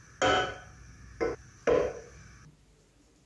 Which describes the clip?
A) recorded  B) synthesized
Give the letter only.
A